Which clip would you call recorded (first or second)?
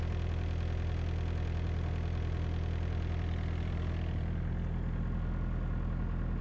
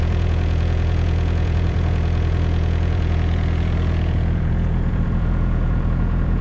first